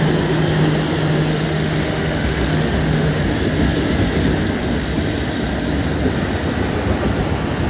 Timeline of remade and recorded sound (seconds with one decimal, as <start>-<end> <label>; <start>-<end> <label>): 0.0-1.3 recorded; 1.3-3.2 remade; 3.2-7.7 recorded